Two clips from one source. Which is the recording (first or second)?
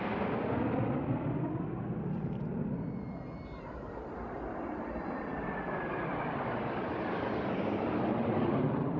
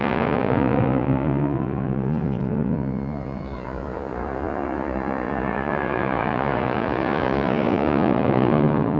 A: first